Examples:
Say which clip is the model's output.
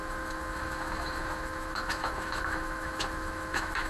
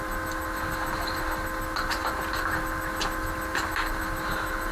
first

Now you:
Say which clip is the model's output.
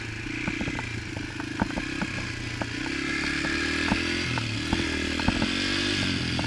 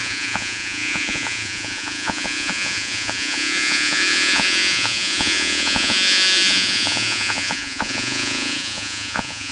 second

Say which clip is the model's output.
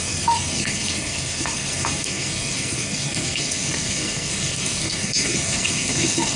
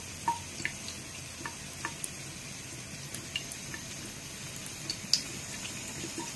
first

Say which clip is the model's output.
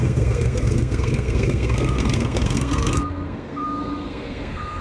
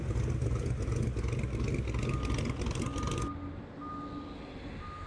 first